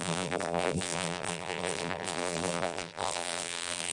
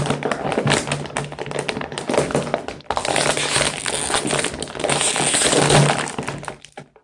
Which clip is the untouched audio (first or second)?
second